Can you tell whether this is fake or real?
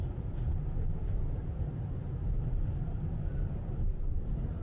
fake